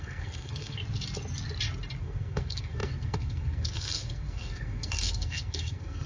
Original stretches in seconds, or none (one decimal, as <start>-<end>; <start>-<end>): 0.8-2.0